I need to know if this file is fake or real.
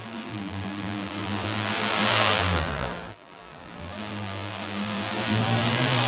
fake